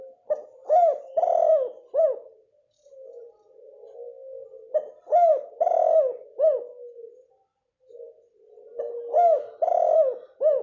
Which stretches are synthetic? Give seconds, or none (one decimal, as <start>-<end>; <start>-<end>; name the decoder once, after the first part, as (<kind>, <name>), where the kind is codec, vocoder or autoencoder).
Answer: none